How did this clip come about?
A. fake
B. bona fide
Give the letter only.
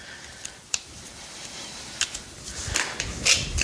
B